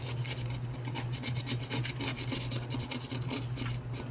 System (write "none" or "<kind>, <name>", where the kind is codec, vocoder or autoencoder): none